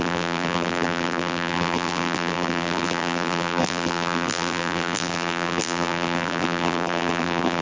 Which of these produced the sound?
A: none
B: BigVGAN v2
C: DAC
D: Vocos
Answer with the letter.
B